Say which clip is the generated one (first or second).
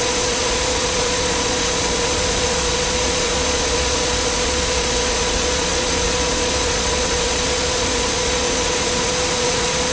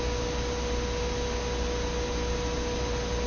first